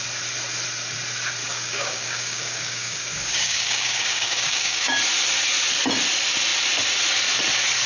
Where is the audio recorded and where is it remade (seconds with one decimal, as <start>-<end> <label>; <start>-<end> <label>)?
0.0-1.4 recorded; 1.4-4.9 remade; 4.9-7.9 recorded